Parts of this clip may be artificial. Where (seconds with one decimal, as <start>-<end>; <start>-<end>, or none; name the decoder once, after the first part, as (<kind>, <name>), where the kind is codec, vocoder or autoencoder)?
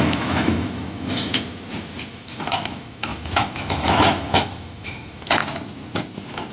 0.0-1.3 (autoencoder, DAC-VAE); 2.1-5.4